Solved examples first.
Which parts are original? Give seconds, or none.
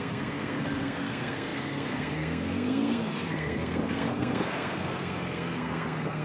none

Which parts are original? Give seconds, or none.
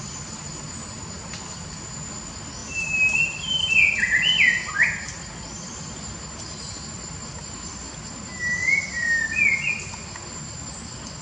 0.0-11.2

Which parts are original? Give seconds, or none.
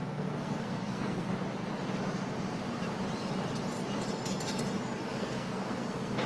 1.3-5.1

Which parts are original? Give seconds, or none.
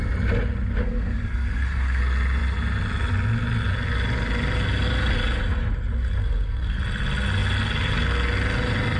0.0-0.8; 2.0-6.2; 6.8-9.0